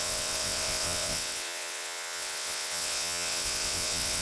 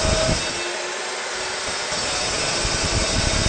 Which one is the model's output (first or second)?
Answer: first